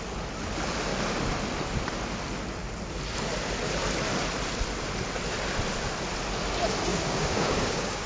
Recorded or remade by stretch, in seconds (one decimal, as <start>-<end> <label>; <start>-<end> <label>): 0.0-6.9 recorded; 6.9-8.1 remade